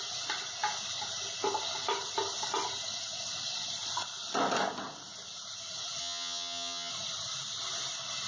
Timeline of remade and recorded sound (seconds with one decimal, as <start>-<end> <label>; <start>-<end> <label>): 0.0-6.0 recorded; 6.0-6.9 remade; 6.9-8.3 recorded